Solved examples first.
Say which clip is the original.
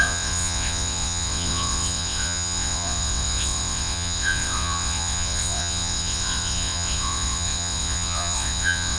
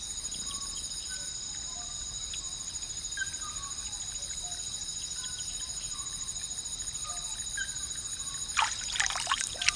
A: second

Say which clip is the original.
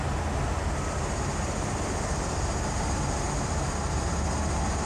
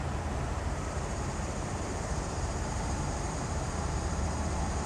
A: first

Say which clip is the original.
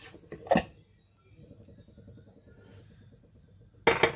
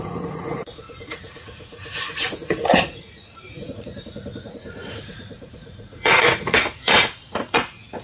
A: first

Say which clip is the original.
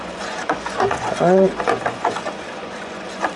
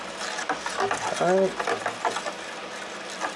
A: second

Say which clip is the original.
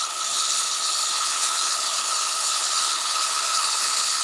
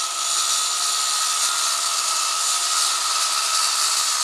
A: second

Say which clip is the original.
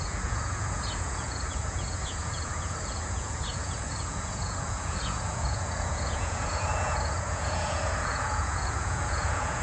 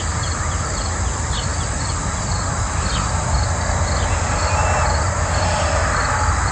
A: second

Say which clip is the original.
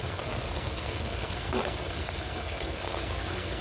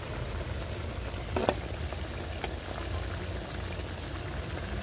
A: second